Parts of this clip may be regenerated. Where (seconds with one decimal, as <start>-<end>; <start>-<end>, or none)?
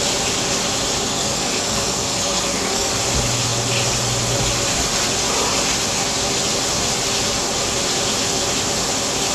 1.1-2.9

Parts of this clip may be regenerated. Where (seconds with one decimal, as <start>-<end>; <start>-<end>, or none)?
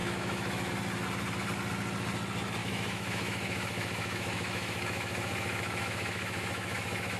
0.0-0.7; 2.6-7.2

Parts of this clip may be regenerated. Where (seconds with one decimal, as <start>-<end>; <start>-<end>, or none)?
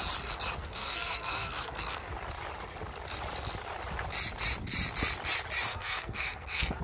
0.6-2.1; 5.7-6.8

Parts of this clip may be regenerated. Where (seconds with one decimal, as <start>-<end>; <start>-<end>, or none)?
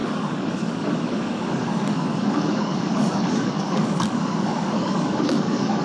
0.0-5.8